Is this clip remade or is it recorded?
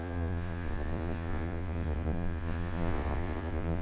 remade